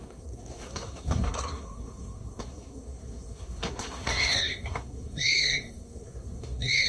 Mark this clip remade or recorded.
remade